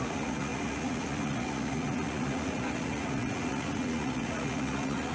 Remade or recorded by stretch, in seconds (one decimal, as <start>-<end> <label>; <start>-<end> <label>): 0.0-5.1 remade